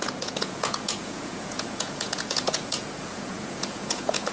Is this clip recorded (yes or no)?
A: no